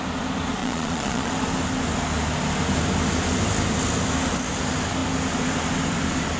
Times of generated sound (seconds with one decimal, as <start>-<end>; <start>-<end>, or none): 0.6-1.3